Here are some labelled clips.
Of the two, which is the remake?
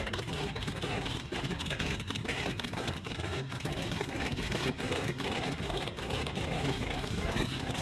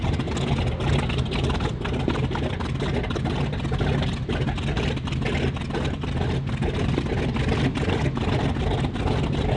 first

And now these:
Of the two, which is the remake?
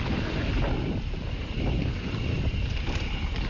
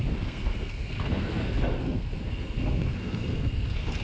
second